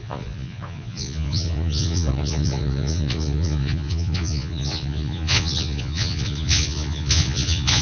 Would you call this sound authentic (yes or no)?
no